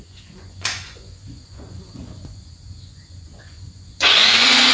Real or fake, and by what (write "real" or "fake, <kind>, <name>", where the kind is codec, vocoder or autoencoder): fake, vocoder, Vocos